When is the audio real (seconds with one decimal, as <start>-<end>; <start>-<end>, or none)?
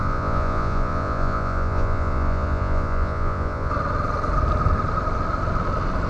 3.7-6.1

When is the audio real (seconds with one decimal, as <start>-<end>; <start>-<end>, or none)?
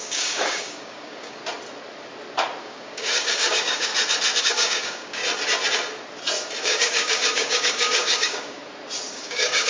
1.4-2.6; 3.9-4.4; 5.2-6.6; 8.6-9.1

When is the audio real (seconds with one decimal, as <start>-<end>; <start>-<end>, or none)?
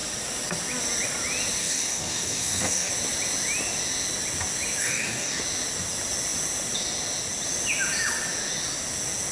0.0-1.6; 2.9-4.8; 5.4-9.3